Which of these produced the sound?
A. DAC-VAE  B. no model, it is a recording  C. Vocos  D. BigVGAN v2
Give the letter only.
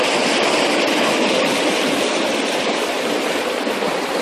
B